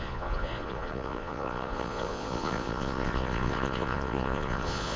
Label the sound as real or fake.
fake